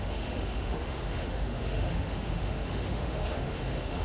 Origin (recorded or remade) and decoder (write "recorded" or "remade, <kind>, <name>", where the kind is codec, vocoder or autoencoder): remade, autoencoder, DAC-VAE